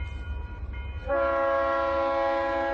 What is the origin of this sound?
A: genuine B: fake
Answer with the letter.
A